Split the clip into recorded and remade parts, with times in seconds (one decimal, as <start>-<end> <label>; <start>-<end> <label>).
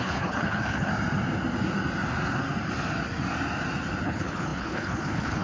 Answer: 0.0-0.9 remade; 0.9-4.0 recorded; 4.0-5.4 remade